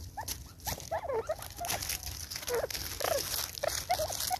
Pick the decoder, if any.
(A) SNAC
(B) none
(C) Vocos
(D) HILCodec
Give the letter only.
B